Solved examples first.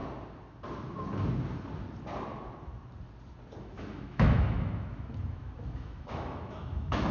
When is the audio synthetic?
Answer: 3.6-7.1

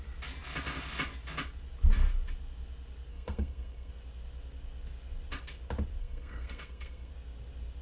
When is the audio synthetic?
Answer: 3.1-3.9; 6.0-7.1

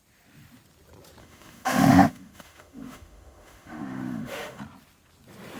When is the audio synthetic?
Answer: 1.2-4.6

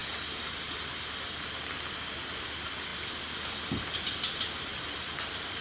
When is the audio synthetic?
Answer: 2.9-3.5; 4.7-5.6

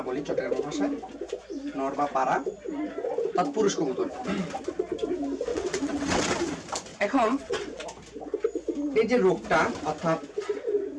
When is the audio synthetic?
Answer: 5.5-6.3; 6.9-7.8

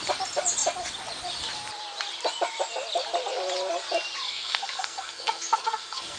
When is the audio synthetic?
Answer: 4.3-6.2

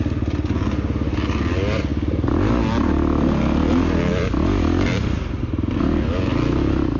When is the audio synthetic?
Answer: none